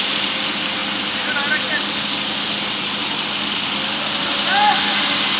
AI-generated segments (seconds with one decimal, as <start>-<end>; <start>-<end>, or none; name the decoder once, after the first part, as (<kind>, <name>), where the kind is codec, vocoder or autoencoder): none